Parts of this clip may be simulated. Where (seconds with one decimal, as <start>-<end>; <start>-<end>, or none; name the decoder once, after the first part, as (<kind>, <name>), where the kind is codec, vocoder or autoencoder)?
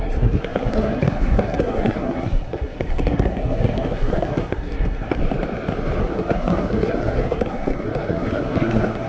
0.0-5.2 (codec, SNAC); 6.0-9.1